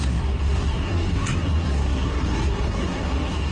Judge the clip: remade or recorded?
remade